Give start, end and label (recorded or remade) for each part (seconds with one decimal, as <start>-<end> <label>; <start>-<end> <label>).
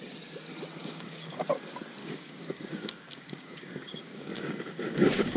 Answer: 0.0-0.8 recorded; 0.8-1.4 remade; 1.4-2.0 recorded; 2.0-5.4 remade